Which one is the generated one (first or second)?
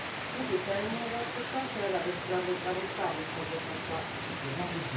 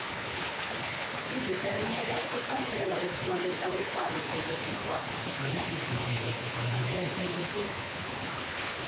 second